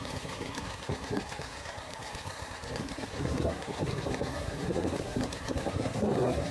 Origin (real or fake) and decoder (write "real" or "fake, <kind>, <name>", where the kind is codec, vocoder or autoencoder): fake, codec, SNAC